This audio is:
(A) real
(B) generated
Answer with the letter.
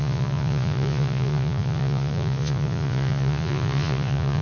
B